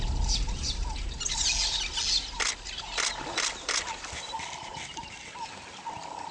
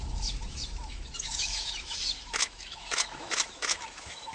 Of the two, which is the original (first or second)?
first